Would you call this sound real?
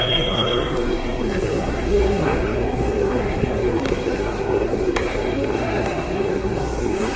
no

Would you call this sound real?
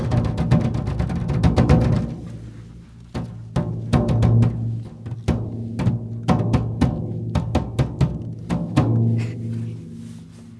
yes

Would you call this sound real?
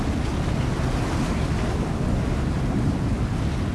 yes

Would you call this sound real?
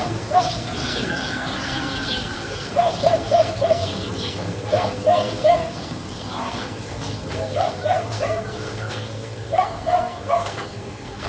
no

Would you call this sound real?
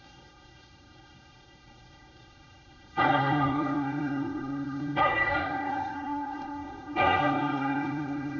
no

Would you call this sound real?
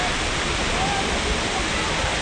yes